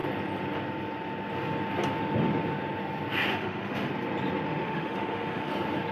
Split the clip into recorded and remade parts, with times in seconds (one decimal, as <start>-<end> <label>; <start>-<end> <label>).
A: 0.0-3.3 recorded; 3.3-3.9 remade; 3.9-4.5 recorded; 4.5-5.5 remade; 5.5-5.9 recorded